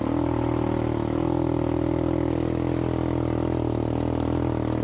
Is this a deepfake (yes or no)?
no